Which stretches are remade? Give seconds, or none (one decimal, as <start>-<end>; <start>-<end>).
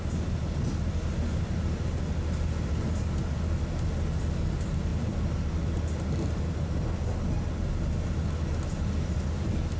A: none